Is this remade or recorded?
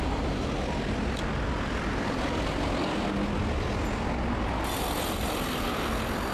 recorded